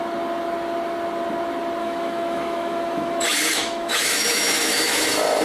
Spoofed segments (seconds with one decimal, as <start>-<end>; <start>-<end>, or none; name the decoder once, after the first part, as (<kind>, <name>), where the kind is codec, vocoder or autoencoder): 1.8-5.0 (autoencoder, DAC-VAE)